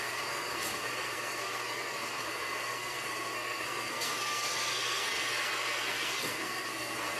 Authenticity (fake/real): fake